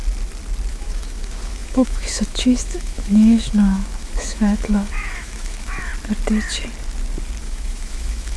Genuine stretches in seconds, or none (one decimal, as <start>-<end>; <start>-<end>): 0.0-0.7; 5.9-7.4